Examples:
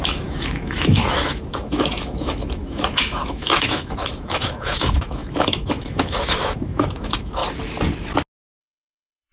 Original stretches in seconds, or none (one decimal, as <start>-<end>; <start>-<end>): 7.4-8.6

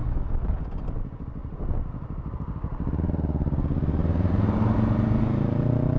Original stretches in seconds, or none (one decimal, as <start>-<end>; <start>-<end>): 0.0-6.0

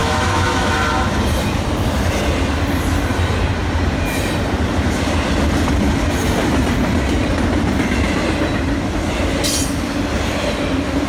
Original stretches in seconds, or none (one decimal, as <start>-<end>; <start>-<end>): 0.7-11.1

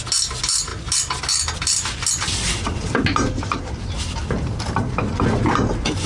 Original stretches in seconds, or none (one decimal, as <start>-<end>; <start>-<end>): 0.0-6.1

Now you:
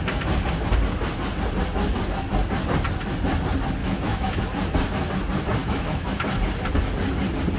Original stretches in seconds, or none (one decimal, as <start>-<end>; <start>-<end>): 0.0-3.8; 4.4-5.6; 6.3-7.6

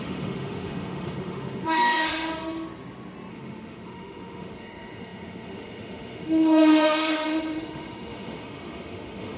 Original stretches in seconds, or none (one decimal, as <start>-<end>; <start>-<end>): 2.3-3.3